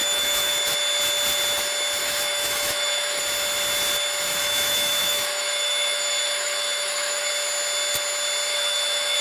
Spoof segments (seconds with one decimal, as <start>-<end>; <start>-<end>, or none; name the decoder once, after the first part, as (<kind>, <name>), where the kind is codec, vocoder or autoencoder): 0.0-0.5 (autoencoder, DAC-VAE); 2.0-3.2; 4.4-7.3; 8.5-9.2